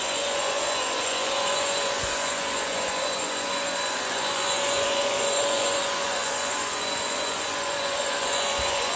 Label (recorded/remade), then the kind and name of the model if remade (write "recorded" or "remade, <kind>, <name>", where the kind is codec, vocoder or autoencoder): remade, vocoder, Vocos